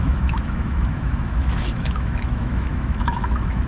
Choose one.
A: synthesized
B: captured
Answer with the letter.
A